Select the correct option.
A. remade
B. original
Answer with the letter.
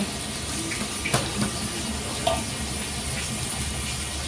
B